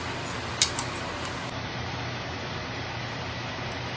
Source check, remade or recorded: recorded